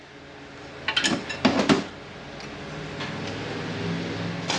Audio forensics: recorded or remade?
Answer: recorded